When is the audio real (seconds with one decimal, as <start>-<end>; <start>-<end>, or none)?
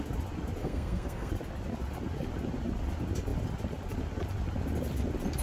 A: 0.0-0.6; 1.3-5.4